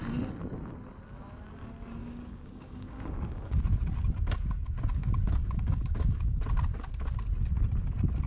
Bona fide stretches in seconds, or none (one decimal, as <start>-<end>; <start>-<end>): 0.0-2.0; 3.6-4.9; 6.4-8.3

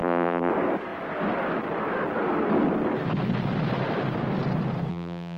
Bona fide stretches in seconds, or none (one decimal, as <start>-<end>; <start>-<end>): 0.5-4.9

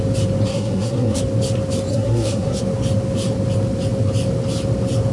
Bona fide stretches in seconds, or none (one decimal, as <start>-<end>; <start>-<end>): 0.0-0.5; 1.2-1.9; 2.6-5.1

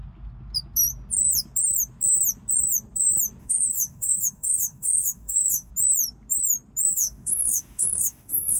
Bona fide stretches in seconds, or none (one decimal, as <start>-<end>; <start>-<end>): 0.0-3.4; 5.7-6.9